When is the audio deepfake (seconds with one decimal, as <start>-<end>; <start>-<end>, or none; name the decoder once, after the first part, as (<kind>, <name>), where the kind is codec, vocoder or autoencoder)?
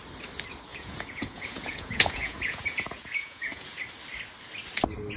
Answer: 0.7-3.8 (vocoder, Vocos)